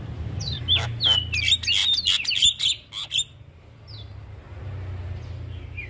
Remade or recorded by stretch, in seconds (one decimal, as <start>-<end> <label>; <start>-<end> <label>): 0.0-5.9 recorded